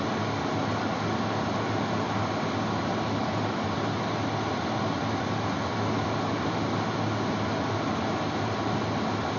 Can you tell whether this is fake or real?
real